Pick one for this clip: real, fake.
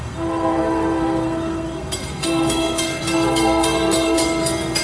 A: fake